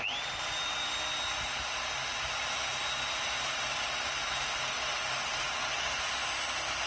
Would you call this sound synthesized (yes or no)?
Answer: no